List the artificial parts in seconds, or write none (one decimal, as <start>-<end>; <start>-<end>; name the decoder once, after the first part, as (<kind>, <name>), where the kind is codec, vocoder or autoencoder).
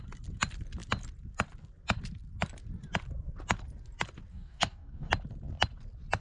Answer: 4.3-5.1 (codec, DAC)